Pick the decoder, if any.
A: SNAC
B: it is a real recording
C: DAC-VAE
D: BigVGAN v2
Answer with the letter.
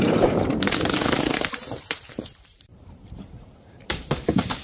D